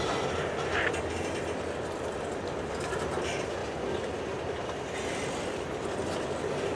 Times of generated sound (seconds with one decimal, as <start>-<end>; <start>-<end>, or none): none